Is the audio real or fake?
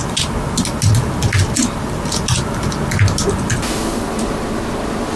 real